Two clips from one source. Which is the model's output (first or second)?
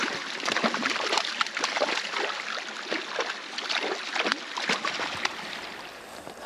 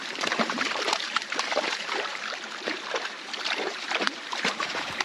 second